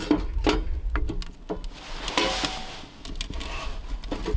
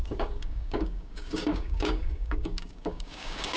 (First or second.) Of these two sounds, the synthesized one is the second